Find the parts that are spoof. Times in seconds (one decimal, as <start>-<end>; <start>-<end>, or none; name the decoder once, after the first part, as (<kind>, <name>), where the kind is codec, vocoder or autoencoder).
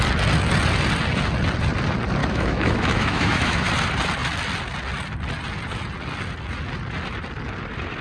2.2-3.7 (autoencoder, DAC-VAE)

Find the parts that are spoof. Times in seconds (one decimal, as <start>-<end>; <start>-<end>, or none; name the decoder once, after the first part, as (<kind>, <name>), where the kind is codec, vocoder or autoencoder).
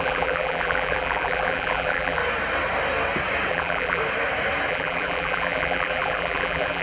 0.0-2.2 (vocoder, BigVGAN v2); 3.5-4.0; 4.7-6.8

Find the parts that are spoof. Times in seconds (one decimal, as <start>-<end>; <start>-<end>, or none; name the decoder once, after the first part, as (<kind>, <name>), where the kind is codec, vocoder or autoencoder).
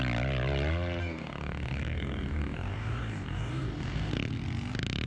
1.0-4.1 (codec, DAC)